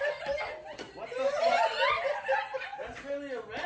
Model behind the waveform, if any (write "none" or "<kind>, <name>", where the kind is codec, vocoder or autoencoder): none